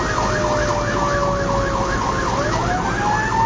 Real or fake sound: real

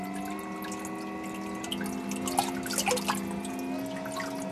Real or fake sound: real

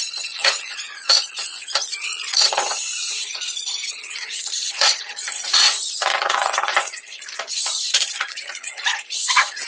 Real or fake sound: fake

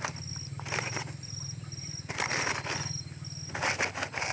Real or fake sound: real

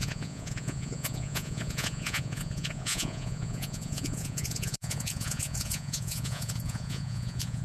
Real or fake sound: fake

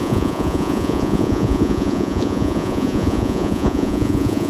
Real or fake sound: fake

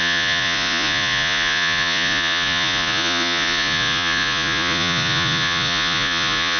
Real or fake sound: fake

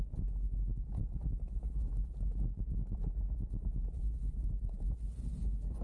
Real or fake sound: real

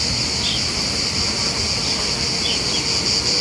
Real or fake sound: real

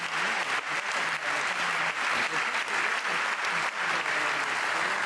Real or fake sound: real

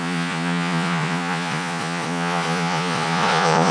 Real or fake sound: fake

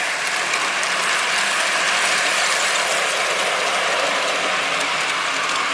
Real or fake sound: real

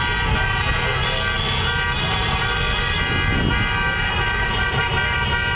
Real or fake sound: real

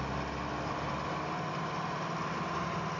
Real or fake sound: real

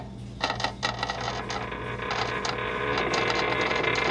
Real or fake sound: real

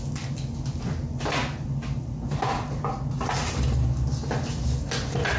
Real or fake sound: real